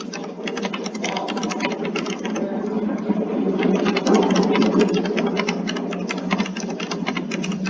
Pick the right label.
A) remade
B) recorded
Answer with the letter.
B